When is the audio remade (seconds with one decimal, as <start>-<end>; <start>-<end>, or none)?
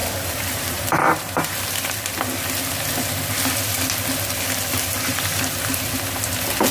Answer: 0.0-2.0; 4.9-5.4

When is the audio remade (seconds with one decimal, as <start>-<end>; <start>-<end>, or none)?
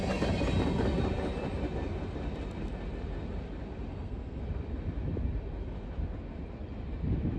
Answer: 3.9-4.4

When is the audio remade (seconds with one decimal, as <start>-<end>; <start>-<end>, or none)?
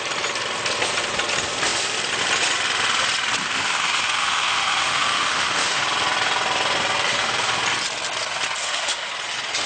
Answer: 3.4-5.8; 8.6-9.1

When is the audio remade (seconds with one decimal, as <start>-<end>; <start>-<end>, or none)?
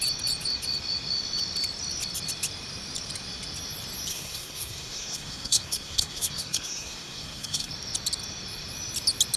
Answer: 4.1-7.7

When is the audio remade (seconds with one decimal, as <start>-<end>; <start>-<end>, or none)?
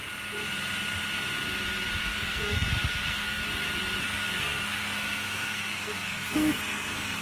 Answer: 2.0-3.4; 4.0-7.2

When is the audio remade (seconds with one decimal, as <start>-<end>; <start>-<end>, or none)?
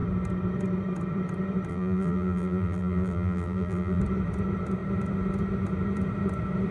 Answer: 1.7-4.0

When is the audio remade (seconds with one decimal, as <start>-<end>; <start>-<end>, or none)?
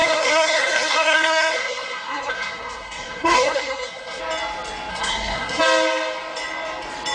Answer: 0.0-4.2; 4.9-5.6